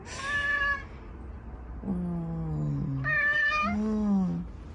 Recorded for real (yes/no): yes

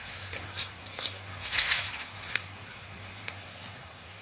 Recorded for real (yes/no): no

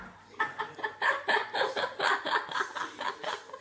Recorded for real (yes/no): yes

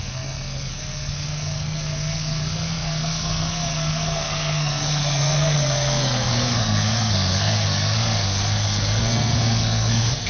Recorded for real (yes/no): no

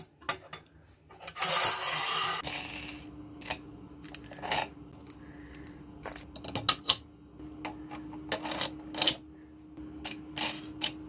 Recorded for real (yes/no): yes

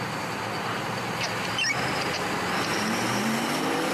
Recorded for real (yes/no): no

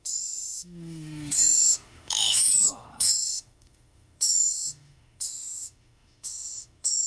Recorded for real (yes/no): no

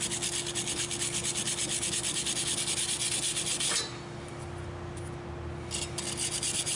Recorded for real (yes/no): yes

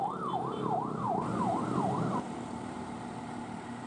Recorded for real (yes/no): no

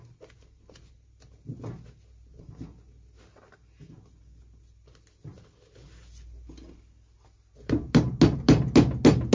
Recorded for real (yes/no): yes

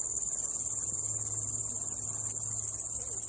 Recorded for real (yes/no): yes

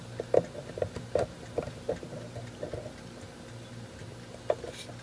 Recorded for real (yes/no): yes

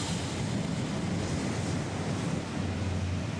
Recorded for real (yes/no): yes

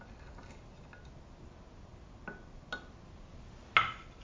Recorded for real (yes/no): yes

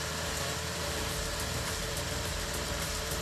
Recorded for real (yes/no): no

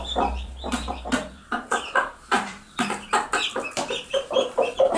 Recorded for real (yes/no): no